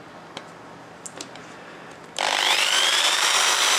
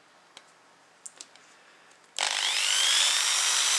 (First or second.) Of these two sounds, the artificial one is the first